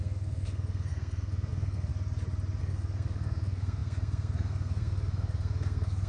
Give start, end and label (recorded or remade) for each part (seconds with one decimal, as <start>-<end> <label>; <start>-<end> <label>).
0.0-1.9 remade; 1.9-2.6 recorded; 2.6-6.1 remade